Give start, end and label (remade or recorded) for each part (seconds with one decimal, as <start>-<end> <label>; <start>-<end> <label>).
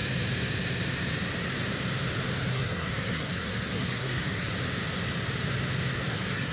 0.0-2.5 recorded; 2.5-4.5 remade; 4.5-6.1 recorded; 6.1-6.5 remade